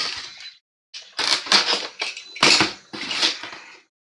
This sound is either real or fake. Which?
real